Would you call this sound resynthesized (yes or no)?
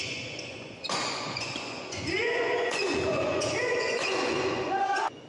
yes